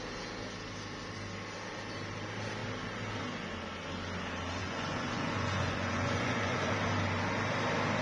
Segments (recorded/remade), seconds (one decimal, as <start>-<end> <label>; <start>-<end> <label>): 0.0-4.6 recorded; 4.6-6.7 remade; 6.7-8.0 recorded